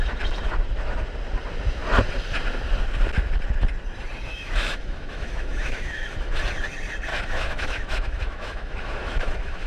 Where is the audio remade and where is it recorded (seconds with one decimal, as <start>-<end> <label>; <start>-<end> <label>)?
0.0-4.3 recorded; 4.3-6.3 remade; 6.3-7.1 recorded; 7.1-9.7 remade